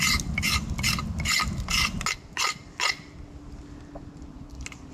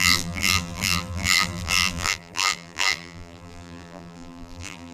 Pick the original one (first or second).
first